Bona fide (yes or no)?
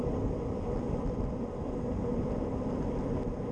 yes